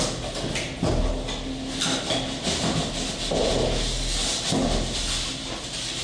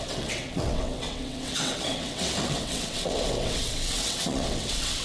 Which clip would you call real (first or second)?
first